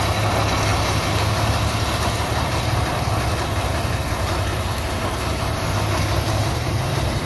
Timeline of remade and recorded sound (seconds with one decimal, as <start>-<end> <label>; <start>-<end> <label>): 0.0-0.7 recorded; 0.7-1.2 remade; 1.2-3.7 recorded; 3.7-6.0 remade; 6.0-6.4 recorded; 6.4-7.3 remade